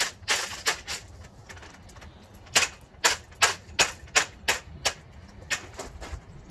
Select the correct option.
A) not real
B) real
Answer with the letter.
B